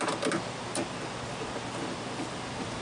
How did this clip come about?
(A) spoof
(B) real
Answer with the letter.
B